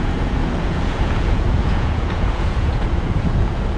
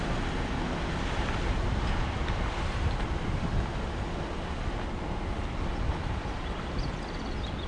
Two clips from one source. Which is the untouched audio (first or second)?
second